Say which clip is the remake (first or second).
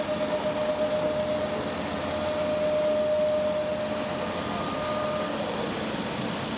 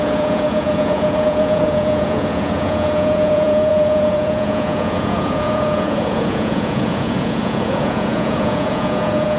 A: second